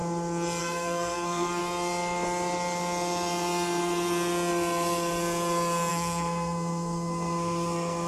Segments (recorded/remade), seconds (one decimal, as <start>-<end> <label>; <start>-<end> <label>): 0.0-0.6 recorded; 0.6-1.6 remade; 1.6-5.9 recorded; 5.9-8.1 remade